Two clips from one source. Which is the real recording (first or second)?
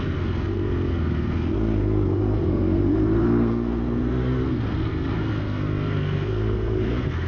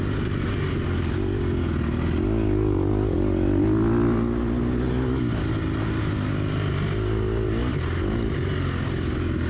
second